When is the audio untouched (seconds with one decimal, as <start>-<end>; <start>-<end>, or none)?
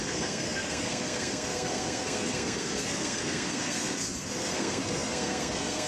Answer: none